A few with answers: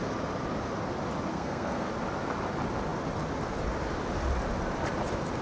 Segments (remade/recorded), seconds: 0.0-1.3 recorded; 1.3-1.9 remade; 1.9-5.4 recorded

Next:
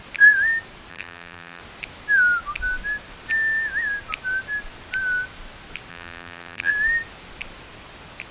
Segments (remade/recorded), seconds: 0.0-0.9 recorded; 0.9-1.6 remade; 1.6-5.9 recorded; 5.9-6.7 remade; 6.7-8.3 recorded